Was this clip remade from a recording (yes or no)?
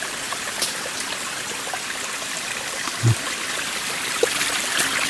yes